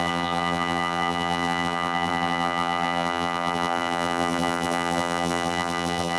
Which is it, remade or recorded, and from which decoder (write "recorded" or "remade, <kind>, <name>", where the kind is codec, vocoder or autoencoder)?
remade, vocoder, BigVGAN v2